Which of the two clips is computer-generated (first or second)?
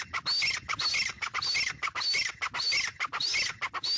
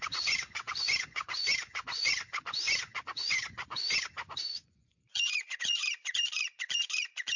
second